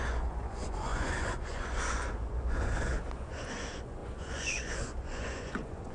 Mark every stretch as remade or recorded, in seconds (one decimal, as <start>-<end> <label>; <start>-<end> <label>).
0.0-5.9 remade